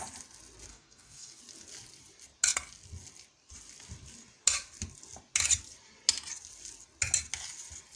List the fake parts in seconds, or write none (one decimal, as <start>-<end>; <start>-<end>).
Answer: 0.7-1.4